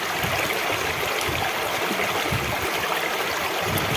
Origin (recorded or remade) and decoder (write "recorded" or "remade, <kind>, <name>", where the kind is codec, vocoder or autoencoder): recorded